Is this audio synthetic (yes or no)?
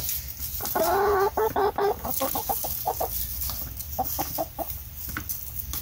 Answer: no